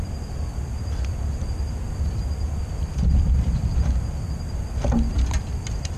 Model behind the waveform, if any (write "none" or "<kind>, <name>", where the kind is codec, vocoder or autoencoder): vocoder, BigVGAN v2